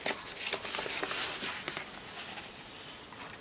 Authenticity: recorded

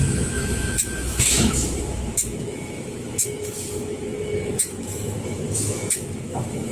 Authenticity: remade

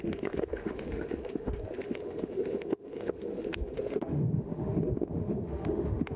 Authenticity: remade